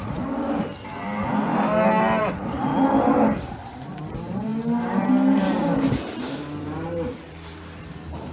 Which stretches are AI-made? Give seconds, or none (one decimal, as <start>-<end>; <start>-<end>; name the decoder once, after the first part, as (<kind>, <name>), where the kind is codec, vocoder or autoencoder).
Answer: 0.0-1.5 (vocoder, BigVGAN v2); 2.2-2.7; 3.4-8.3